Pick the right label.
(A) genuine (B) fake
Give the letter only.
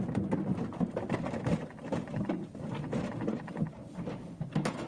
A